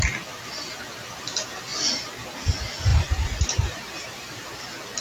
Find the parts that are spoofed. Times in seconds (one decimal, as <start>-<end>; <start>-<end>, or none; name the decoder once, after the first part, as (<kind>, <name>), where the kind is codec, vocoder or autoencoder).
2.9-4.6 (vocoder, BigVGAN v2)